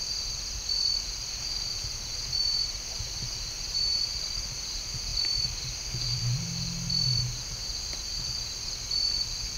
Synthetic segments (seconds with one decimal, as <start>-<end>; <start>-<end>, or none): 2.4-4.0